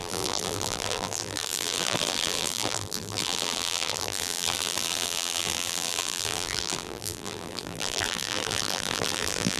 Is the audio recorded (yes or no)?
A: no